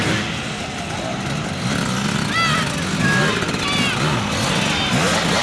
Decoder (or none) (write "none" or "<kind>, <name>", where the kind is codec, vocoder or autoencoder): none